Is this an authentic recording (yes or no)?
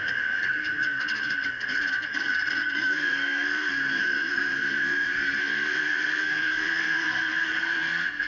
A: no